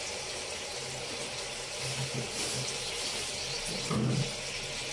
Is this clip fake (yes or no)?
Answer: no